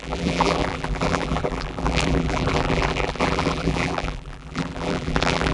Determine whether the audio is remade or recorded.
remade